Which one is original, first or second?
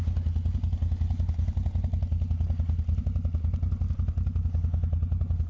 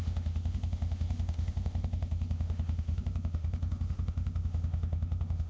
first